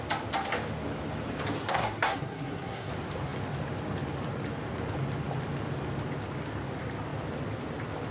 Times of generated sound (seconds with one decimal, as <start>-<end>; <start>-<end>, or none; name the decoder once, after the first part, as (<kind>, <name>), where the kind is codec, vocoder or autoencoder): 1.6-2.9 (codec, SNAC)